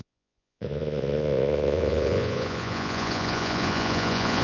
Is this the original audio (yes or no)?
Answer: no